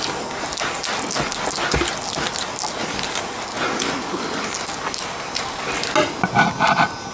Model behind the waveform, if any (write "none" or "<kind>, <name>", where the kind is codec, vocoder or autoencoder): none